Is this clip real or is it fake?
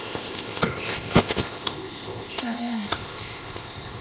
fake